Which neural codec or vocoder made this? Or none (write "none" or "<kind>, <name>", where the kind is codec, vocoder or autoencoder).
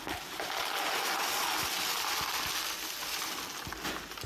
none